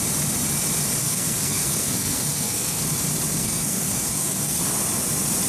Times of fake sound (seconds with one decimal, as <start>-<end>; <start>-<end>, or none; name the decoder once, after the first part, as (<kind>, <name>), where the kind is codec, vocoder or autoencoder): 1.0-2.8 (codec, SNAC); 3.4-4.6